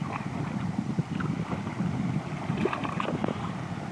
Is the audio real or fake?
real